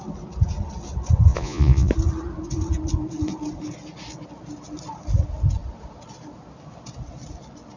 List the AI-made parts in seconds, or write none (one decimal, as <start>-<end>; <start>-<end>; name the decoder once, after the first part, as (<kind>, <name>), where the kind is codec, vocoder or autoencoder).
1.3-1.9 (vocoder, Vocos)